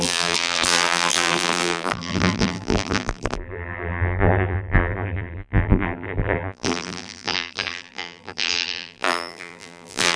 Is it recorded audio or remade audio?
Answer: remade